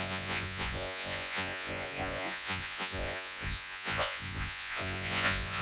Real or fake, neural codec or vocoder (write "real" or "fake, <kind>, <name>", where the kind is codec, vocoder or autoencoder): fake, vocoder, Vocos